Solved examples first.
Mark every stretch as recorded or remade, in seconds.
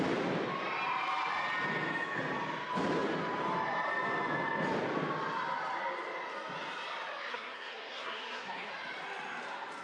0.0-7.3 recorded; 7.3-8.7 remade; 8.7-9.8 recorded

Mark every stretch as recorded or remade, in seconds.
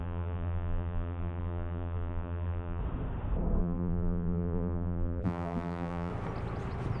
0.0-2.8 remade; 2.8-3.6 recorded; 3.6-6.1 remade; 6.1-7.0 recorded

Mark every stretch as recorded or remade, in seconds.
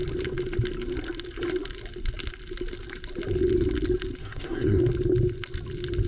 0.0-4.2 recorded; 4.2-4.8 remade; 4.8-6.1 recorded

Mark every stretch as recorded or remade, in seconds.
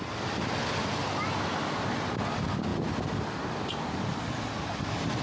0.0-5.2 recorded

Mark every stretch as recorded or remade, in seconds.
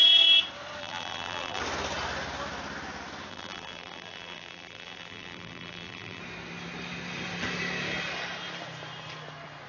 0.0-0.8 recorded; 0.8-1.6 remade; 1.6-3.3 recorded; 3.3-6.2 remade; 6.2-9.7 recorded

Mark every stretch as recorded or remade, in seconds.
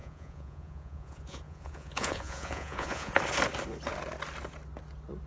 0.0-3.2 remade; 3.2-5.3 recorded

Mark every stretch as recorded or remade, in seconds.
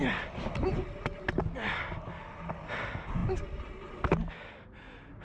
0.0-5.2 recorded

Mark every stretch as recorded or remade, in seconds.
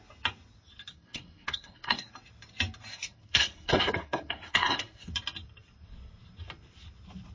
0.0-0.9 recorded; 0.9-2.1 remade; 2.1-2.9 recorded; 2.9-5.1 remade; 5.1-7.3 recorded